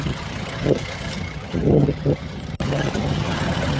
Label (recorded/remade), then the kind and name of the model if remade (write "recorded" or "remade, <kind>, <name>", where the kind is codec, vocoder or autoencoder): remade, vocoder, HiFi-GAN